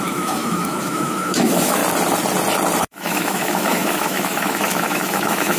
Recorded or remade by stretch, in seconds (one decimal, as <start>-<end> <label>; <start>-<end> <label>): 0.0-1.8 remade; 1.8-2.8 recorded; 2.8-5.6 remade